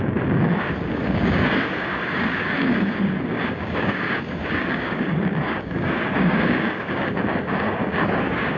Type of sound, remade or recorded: remade